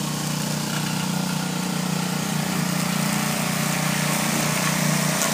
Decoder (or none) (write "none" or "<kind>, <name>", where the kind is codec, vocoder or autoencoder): none